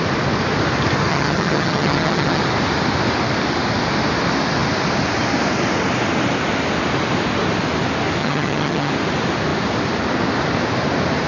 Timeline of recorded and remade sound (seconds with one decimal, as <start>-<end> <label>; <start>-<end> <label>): 0.0-1.1 recorded; 1.1-2.4 remade; 2.4-8.2 recorded; 8.2-8.9 remade; 8.9-11.3 recorded